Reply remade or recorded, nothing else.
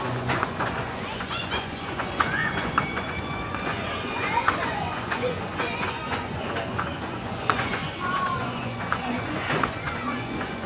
remade